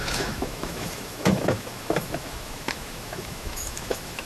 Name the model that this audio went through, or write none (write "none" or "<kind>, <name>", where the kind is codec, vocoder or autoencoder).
autoencoder, DAC-VAE